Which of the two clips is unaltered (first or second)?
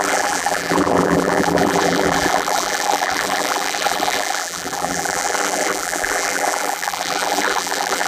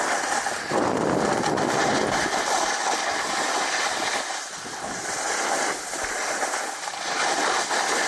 second